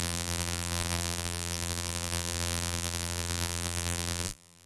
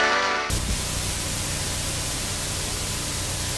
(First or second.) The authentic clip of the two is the second